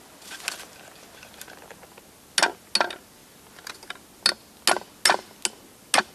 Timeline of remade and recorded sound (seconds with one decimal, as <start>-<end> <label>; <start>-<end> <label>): 0.0-6.1 recorded